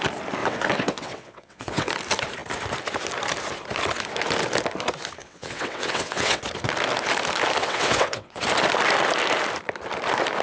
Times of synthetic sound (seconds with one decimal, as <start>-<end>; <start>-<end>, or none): 0.4-1.9; 5.2-6.4; 7.6-8.4